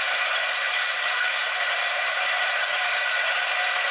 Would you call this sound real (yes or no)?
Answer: no